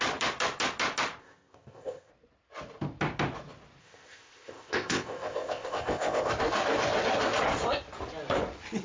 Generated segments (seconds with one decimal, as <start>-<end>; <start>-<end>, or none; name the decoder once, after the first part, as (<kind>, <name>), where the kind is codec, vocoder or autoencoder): 1.2-2.1 (codec, ZipCodec); 3.8-6.3